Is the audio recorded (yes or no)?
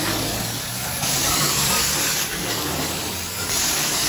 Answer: no